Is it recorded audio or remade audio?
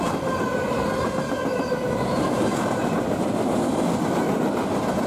recorded